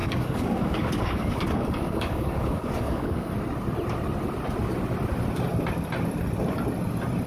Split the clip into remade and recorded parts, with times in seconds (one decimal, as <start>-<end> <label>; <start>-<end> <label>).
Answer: 0.0-3.3 remade; 3.3-7.3 recorded